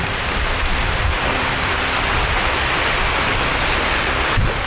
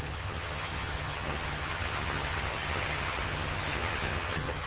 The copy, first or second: second